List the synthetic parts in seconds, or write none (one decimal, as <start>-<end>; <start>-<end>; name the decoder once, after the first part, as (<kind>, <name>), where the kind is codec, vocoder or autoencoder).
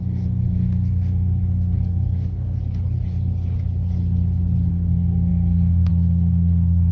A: 0.0-2.6 (codec, SNAC); 4.7-6.9